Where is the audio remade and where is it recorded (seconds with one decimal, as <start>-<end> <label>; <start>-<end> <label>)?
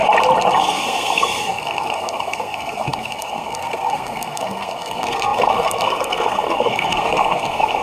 0.0-0.6 recorded; 0.6-7.8 remade